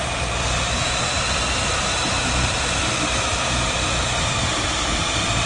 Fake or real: fake